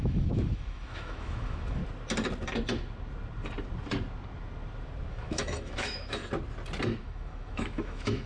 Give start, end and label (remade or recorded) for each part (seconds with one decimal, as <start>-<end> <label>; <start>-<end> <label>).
0.0-1.8 remade; 1.8-5.1 recorded; 5.1-6.2 remade; 6.2-7.0 recorded; 7.0-8.3 remade